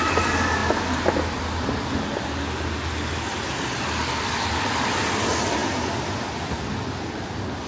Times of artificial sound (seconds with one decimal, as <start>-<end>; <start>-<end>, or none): none